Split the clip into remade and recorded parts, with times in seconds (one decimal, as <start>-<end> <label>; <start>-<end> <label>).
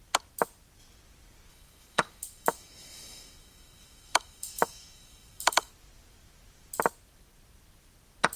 0.0-1.5 recorded; 1.5-5.7 remade; 5.7-8.4 recorded